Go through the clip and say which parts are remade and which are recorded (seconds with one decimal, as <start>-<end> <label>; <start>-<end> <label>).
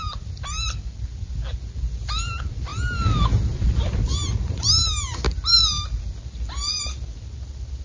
0.0-7.8 recorded